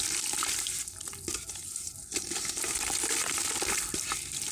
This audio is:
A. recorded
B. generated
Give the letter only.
A